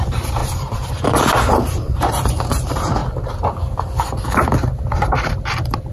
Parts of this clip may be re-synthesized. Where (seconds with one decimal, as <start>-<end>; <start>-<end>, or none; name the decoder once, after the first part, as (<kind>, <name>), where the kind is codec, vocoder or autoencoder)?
0.0-3.0 (vocoder, BigVGAN v2); 4.7-5.9